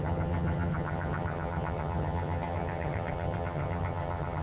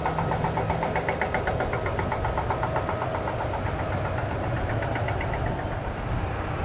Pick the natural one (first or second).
second